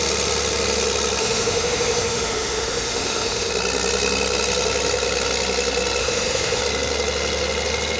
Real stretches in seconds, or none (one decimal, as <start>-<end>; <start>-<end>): 0.0-1.2; 3.5-6.0; 6.6-8.0